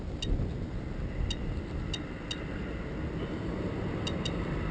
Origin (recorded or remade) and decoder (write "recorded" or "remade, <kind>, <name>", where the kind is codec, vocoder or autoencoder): recorded